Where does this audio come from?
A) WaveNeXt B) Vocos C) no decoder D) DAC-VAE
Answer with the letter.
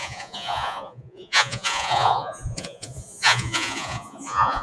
B